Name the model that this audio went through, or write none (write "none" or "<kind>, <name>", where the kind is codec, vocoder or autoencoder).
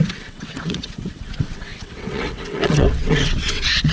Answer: vocoder, WaveNeXt